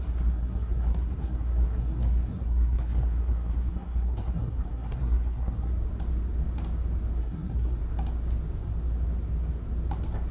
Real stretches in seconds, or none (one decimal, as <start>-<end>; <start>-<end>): 5.7-7.2; 7.8-10.3